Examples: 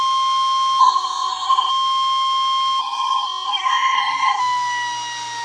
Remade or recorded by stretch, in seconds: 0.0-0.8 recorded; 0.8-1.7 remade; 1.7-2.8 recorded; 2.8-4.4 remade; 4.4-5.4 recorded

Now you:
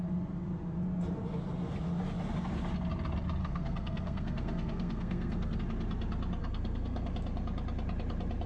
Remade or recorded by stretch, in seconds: 0.0-3.4 recorded; 3.4-5.6 remade; 5.6-6.4 recorded; 6.4-7.1 remade; 7.1-8.5 recorded

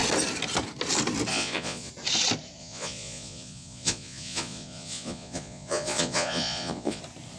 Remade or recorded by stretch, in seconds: 0.0-1.3 recorded; 1.3-1.9 remade; 1.9-2.6 recorded; 2.6-7.0 remade; 7.0-7.4 recorded

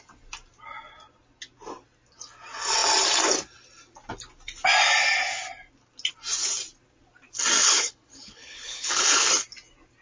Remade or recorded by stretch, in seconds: 0.0-7.6 recorded; 7.6-9.3 remade; 9.3-10.0 recorded

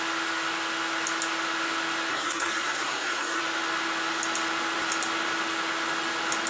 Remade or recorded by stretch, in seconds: 0.0-2.1 recorded; 2.1-3.4 remade; 3.4-6.5 recorded

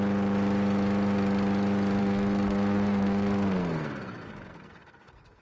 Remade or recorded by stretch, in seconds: 0.0-2.0 recorded; 2.0-5.4 remade